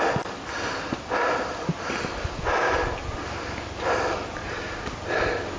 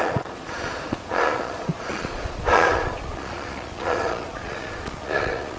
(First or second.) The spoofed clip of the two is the second